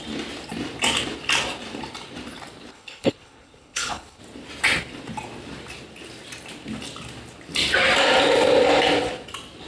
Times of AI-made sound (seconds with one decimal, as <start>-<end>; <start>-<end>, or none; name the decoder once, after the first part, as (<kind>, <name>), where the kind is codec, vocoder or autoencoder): 2.7-4.2 (codec, HILCodec)